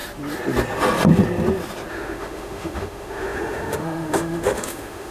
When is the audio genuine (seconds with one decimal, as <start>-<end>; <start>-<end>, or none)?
0.0-1.9